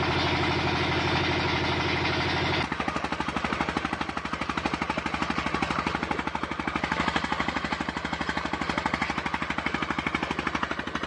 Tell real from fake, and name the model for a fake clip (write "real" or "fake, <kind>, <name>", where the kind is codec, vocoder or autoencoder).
real